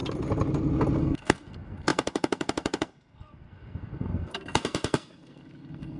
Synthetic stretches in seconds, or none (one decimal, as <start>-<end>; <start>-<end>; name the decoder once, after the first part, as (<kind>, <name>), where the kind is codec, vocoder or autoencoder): 1.0-6.0 (codec, SNAC)